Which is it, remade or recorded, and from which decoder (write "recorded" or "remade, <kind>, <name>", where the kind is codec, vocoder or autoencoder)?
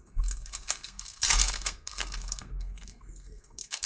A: remade, codec, SNAC